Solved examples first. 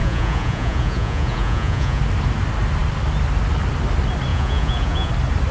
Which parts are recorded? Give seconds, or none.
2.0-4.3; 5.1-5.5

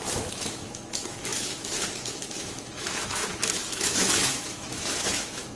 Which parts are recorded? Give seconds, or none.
none

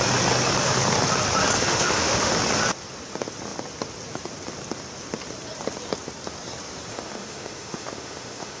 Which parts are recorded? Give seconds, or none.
0.0-1.7; 2.3-6.9

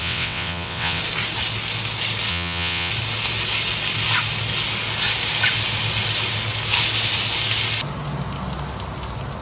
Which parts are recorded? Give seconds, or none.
1.0-2.3; 2.9-9.4

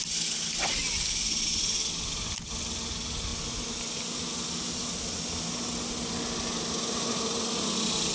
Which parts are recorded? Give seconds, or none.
0.0-8.1